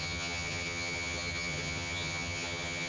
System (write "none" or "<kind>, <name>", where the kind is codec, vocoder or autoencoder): vocoder, HiFi-GAN